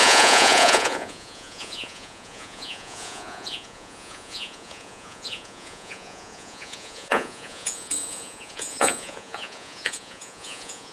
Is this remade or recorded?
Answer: remade